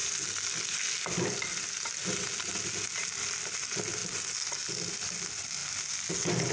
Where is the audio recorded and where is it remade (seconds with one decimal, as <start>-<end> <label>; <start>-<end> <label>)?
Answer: 0.0-6.5 recorded